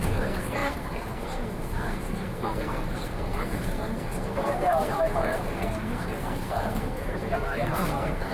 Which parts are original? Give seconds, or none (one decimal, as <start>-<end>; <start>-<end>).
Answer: none